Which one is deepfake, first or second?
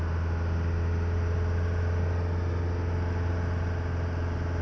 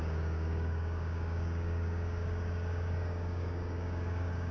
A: second